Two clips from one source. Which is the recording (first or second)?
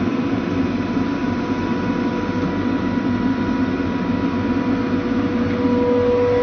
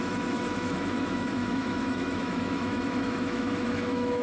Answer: first